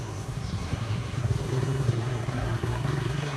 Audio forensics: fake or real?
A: fake